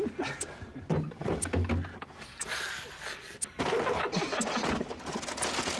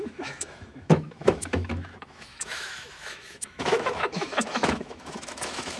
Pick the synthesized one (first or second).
second